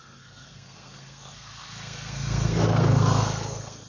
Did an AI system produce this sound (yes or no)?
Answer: yes